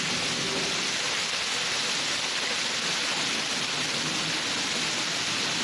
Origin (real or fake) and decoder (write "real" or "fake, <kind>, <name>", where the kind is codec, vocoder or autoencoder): real